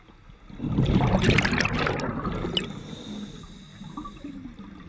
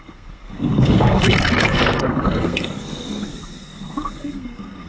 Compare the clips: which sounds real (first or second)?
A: first